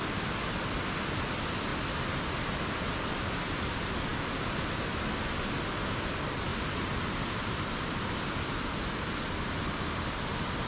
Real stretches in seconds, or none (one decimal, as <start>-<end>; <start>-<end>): 0.0-6.5; 8.1-10.7